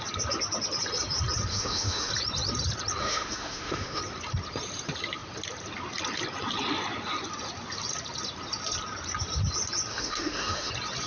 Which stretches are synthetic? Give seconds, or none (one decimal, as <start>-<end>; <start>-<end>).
1.5-2.1; 3.0-4.0; 9.9-10.7